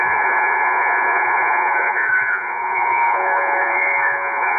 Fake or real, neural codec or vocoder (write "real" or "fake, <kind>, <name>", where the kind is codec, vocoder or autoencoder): fake, vocoder, Vocos